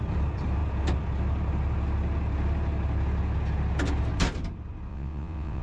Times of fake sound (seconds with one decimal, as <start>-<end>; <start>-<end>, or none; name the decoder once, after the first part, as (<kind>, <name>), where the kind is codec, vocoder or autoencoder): 4.9-5.6 (vocoder, WaveNeXt)